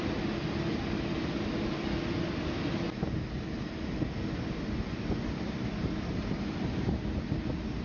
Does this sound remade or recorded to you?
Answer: recorded